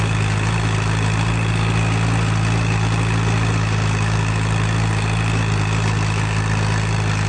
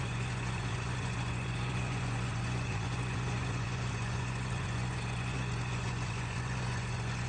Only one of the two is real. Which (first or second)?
first